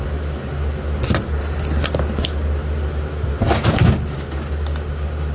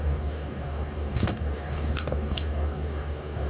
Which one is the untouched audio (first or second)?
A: first